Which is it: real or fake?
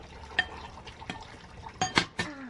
real